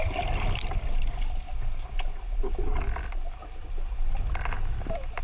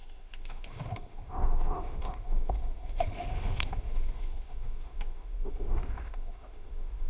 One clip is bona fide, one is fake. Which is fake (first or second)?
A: second